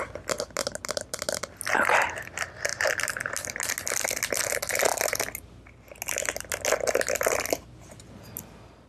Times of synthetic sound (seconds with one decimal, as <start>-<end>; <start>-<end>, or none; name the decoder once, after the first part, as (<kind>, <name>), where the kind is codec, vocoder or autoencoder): none